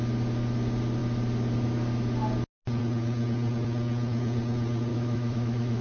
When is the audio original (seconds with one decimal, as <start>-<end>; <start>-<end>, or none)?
0.0-4.9